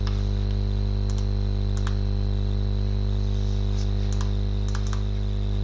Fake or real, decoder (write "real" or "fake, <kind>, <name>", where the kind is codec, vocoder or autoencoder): real